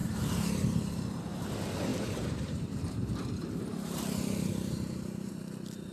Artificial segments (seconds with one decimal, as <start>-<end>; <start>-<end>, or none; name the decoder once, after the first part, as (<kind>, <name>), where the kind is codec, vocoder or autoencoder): 0.0-1.4 (vocoder, BigVGAN v2); 1.9-5.3